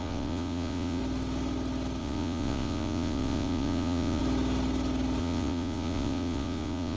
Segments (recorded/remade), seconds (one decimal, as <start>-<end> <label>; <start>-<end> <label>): 0.0-1.0 remade; 1.0-2.0 recorded; 2.0-4.2 remade; 4.2-5.2 recorded; 5.2-7.0 remade

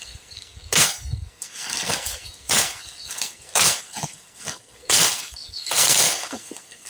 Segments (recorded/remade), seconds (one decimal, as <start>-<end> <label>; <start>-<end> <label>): 0.0-6.9 remade